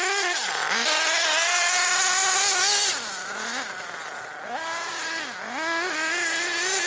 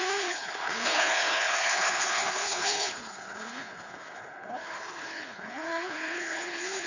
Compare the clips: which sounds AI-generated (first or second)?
second